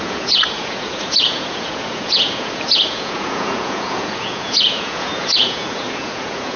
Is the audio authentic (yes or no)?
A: no